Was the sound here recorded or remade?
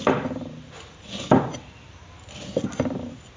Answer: recorded